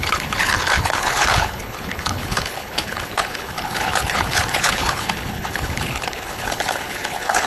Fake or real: fake